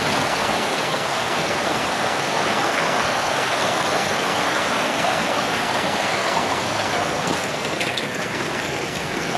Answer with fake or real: fake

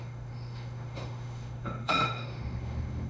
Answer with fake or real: fake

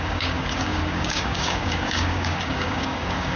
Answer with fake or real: fake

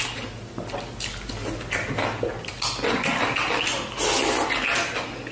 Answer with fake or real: real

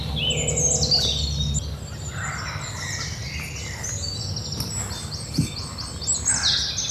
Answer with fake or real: real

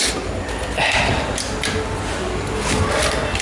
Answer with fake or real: real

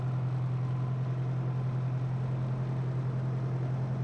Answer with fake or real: real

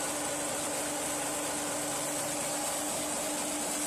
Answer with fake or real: real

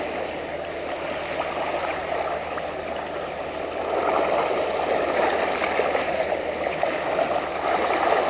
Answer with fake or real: real